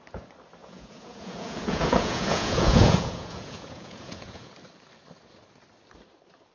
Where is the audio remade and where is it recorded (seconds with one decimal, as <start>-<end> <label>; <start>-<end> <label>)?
0.0-0.6 recorded; 0.6-4.5 remade; 4.5-6.5 recorded